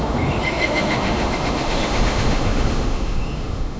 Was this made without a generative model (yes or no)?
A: no